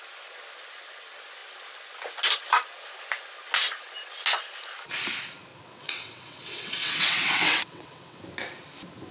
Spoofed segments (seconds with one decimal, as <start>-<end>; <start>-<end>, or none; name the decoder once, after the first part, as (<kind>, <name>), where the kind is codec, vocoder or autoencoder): 5.5-8.2 (vocoder, WaveNeXt)